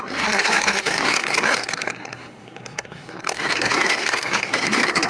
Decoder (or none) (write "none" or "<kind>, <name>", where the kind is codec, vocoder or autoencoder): codec, SNAC